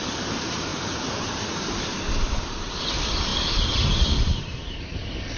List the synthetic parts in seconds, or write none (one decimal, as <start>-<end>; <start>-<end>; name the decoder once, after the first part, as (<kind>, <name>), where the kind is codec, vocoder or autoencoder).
0.0-3.3 (vocoder, BigVGAN v2); 4.8-5.4